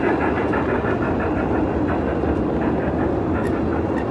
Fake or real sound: real